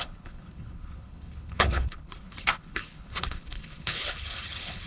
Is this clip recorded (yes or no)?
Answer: no